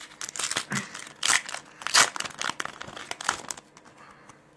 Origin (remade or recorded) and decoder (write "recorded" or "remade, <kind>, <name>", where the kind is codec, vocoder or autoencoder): recorded